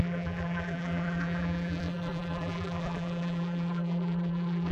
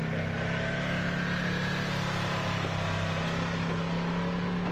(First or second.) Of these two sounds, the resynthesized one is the first